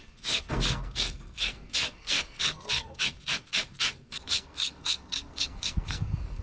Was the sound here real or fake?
fake